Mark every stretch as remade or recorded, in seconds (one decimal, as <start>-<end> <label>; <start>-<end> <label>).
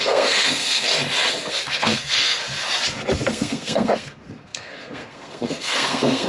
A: 0.0-0.9 remade; 0.9-1.5 recorded; 1.5-2.4 remade; 2.4-3.3 recorded; 3.3-6.3 remade